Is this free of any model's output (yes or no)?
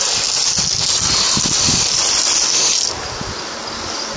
yes